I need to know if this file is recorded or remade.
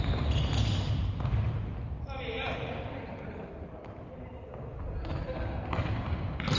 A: recorded